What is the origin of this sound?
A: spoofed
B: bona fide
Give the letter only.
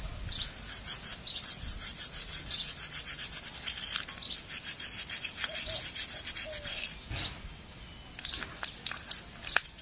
B